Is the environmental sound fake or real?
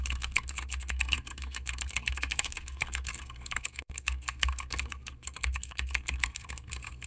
fake